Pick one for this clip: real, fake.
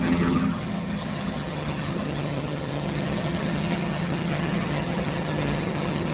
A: fake